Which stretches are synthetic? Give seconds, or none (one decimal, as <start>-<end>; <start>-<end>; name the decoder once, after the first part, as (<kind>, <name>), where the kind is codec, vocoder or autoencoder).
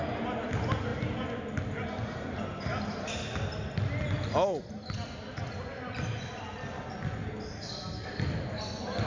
none